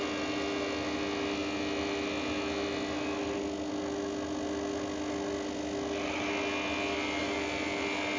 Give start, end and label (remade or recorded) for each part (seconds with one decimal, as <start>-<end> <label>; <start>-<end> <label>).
0.0-8.2 recorded